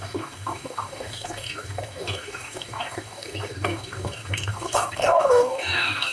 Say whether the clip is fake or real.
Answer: fake